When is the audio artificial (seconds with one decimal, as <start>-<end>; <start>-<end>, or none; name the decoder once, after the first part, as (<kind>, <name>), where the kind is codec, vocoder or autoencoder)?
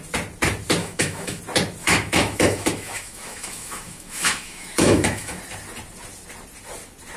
0.8-1.4 (autoencoder, DAC-VAE); 1.8-5.4